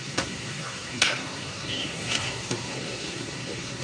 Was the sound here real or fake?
fake